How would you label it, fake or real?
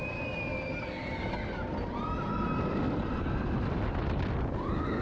real